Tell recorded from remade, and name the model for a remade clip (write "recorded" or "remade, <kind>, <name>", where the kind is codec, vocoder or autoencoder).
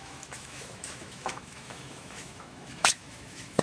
remade, autoencoder, DAC-VAE